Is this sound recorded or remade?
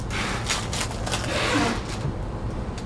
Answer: recorded